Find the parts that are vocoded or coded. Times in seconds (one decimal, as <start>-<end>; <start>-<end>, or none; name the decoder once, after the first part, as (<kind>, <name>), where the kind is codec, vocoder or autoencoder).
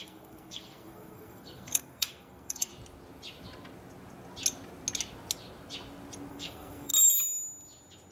0.0-2.7 (codec, SNAC); 6.3-6.9